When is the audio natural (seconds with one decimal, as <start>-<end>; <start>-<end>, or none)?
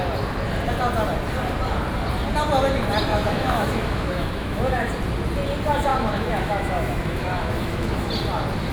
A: 0.0-3.1; 4.9-5.9; 8.1-8.7